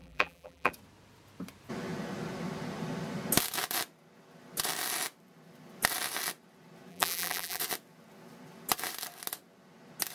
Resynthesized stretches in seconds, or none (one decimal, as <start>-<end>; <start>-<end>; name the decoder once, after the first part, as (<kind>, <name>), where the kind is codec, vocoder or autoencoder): 0.0-0.7 (vocoder, BigVGAN v2); 6.9-7.6